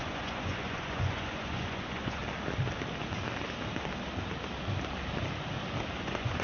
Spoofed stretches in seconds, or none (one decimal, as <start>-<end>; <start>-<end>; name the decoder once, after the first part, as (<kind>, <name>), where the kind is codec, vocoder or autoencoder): 0.0-2.2 (vocoder, Vocos); 6.0-6.4